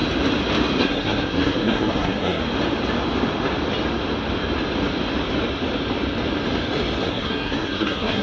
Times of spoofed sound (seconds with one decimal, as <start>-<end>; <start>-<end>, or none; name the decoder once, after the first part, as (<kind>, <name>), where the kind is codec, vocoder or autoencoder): 0.8-2.4 (codec, SNAC); 7.0-8.2